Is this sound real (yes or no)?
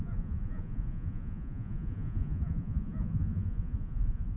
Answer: no